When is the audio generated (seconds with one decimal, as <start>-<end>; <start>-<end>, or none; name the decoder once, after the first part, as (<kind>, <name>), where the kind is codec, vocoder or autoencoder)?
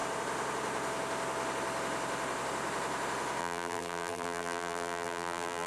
3.4-5.7 (vocoder, BigVGAN v2)